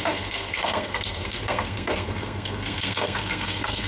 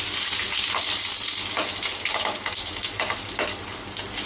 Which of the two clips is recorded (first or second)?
second